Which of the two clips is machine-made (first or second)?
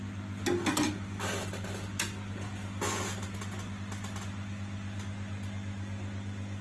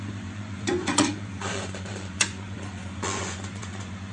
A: second